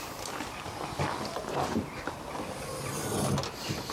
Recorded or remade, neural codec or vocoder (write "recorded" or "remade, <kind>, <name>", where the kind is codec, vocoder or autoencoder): recorded